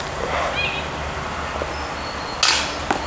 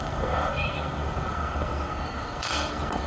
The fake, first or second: second